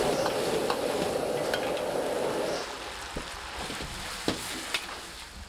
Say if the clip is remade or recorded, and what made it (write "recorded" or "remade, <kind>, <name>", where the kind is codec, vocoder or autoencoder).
recorded